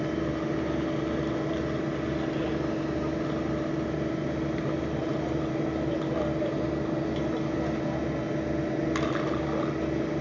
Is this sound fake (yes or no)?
no